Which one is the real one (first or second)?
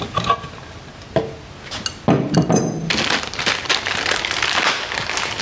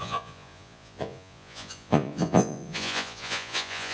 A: first